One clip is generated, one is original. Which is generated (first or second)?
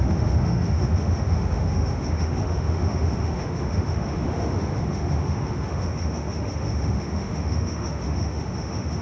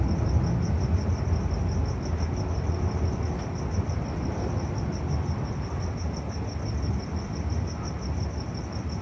first